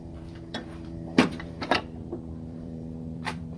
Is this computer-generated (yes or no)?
yes